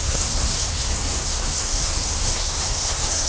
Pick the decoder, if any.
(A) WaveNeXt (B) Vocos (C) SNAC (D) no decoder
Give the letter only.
C